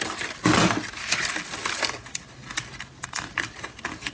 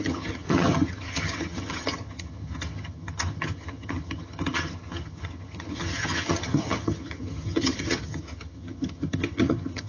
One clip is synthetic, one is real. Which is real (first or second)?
first